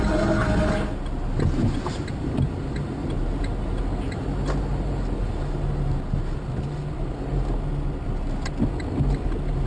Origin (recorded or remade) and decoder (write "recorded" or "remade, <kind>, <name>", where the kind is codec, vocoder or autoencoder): recorded